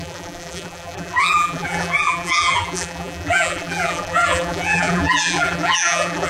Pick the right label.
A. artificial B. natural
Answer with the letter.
A